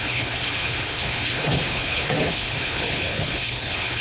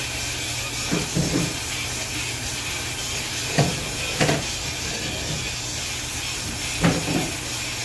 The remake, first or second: first